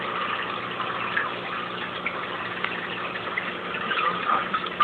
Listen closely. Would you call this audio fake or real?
real